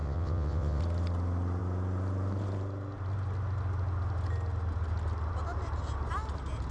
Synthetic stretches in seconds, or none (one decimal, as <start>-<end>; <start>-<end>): 0.0-0.8